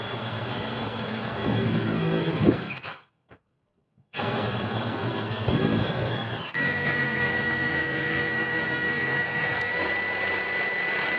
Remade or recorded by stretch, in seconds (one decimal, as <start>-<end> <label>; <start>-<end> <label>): 0.0-9.8 remade; 9.8-11.2 recorded